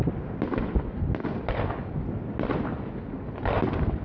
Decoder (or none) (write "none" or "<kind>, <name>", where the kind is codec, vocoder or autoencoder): none